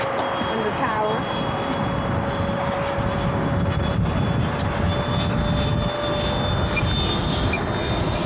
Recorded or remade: recorded